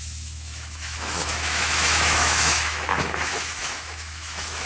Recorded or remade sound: remade